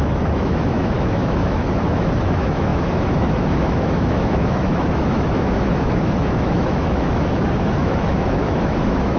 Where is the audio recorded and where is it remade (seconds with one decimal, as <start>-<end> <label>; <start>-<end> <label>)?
0.0-9.2 remade